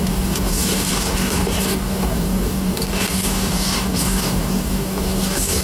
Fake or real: fake